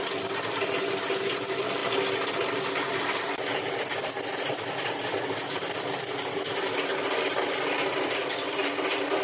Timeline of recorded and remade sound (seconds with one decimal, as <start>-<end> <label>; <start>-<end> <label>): 0.0-9.2 recorded